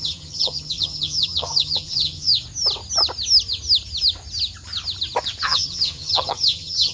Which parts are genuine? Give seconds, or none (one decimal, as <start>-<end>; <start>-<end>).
2.3-5.4